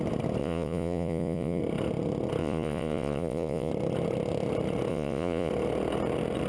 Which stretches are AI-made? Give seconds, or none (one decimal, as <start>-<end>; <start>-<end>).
0.4-1.6; 2.4-3.7; 4.9-5.5